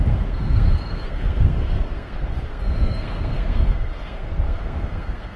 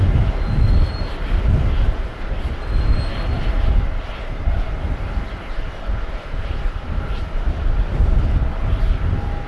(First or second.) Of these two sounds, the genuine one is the second